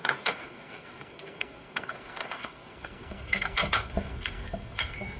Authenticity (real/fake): fake